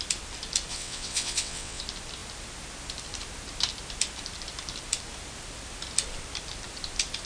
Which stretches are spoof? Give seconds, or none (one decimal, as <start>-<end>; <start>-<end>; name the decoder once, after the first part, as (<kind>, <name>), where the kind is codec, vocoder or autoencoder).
0.7-1.8 (vocoder, WaveNeXt)